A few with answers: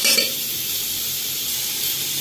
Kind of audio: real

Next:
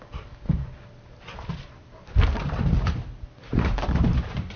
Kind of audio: real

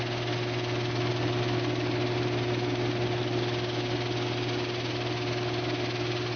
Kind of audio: real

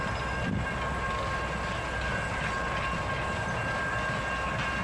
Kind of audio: real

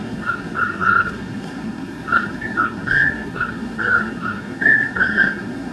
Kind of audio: fake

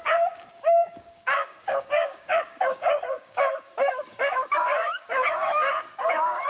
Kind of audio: fake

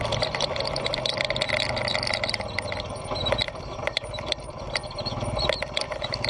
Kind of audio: real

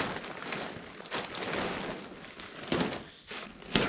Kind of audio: real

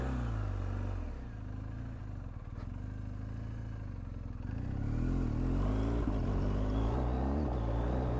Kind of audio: real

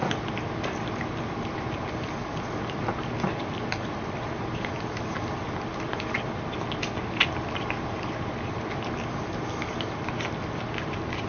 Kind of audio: real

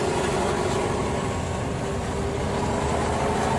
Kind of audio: real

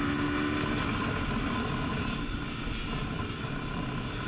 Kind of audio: real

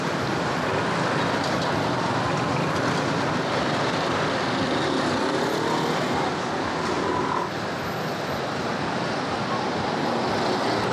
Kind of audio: real